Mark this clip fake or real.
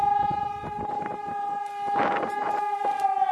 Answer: real